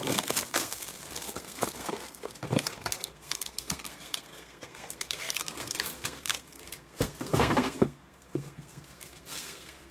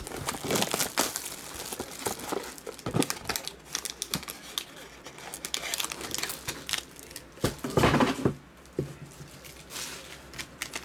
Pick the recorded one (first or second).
second